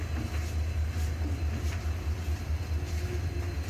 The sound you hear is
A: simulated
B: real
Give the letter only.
B